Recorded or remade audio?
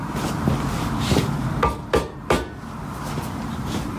recorded